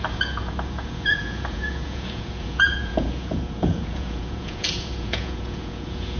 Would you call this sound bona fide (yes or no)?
no